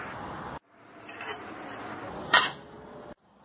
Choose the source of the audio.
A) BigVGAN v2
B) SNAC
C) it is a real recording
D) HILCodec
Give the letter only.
C